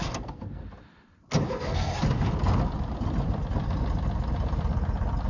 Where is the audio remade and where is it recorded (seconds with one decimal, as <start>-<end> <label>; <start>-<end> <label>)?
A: 0.0-0.6 remade; 0.6-1.5 recorded; 1.5-1.9 remade; 1.9-5.3 recorded